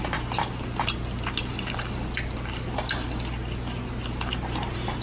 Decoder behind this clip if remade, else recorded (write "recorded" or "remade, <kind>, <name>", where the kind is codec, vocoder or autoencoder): recorded